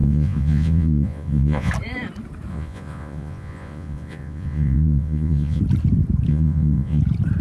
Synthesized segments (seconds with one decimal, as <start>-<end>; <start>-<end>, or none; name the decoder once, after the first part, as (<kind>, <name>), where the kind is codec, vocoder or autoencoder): 0.0-1.7 (vocoder, Vocos); 2.5-5.6; 6.3-7.0